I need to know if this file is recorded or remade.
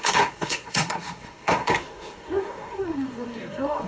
remade